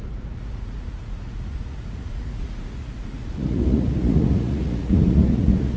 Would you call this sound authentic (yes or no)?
no